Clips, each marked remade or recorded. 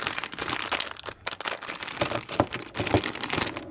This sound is recorded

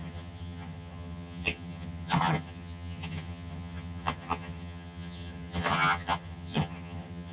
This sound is remade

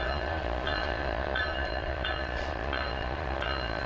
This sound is remade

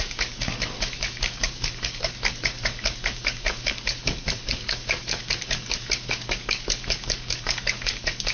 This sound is remade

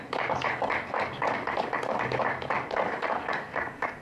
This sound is remade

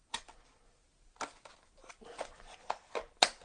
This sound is recorded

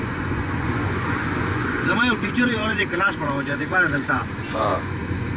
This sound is remade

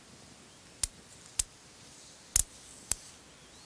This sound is recorded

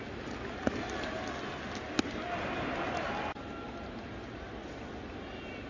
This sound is recorded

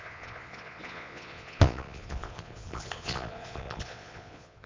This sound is remade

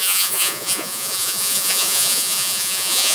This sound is remade